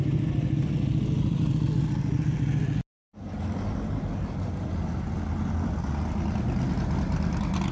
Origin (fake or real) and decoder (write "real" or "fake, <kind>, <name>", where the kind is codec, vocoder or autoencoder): real